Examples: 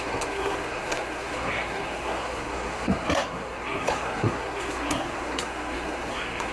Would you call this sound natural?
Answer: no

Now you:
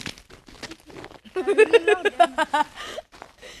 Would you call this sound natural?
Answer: yes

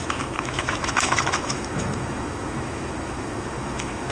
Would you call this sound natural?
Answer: no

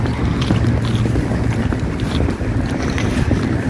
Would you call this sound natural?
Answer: yes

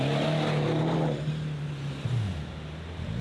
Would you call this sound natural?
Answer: yes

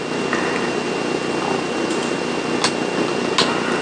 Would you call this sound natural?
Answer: yes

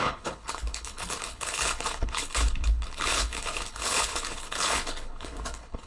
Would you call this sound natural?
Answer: no